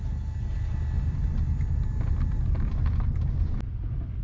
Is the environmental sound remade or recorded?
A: recorded